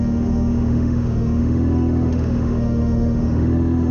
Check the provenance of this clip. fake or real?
fake